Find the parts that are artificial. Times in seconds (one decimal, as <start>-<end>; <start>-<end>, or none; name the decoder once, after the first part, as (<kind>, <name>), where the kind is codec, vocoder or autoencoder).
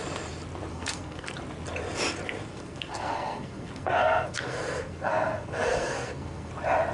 0.7-1.3 (codec, SNAC); 2.5-6.5